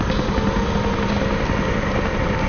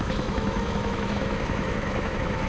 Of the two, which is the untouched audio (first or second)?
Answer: first